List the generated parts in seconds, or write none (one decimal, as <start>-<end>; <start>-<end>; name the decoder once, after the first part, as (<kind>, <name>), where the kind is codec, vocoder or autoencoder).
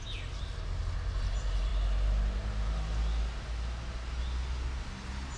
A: none